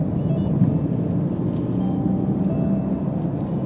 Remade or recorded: recorded